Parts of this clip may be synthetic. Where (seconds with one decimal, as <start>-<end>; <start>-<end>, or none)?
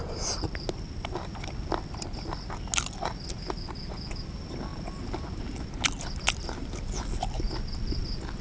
none